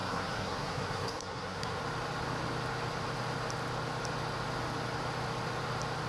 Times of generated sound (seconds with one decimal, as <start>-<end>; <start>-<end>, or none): 0.0-1.8